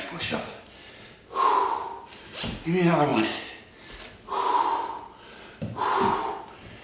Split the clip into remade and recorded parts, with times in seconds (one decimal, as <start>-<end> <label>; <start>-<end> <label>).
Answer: 0.0-6.8 recorded